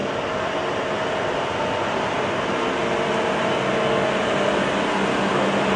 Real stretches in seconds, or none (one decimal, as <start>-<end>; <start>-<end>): 0.0-2.8; 3.6-5.8